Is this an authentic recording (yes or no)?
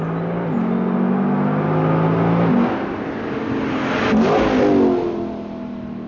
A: yes